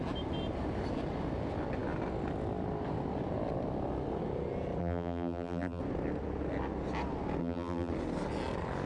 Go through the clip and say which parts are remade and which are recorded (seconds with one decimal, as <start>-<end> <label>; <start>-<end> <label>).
0.0-4.8 recorded; 4.8-5.8 remade; 5.8-7.4 recorded; 7.4-7.9 remade; 7.9-8.9 recorded